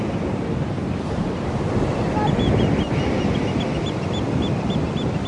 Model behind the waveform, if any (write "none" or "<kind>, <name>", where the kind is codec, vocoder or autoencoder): none